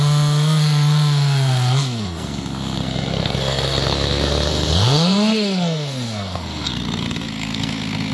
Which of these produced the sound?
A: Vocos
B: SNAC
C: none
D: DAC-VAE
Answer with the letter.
B